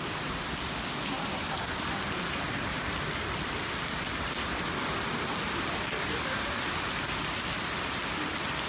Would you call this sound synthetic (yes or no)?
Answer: no